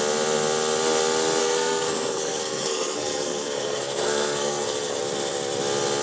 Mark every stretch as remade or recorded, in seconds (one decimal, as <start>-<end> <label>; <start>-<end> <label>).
0.0-1.4 recorded; 1.4-5.0 remade; 5.0-6.0 recorded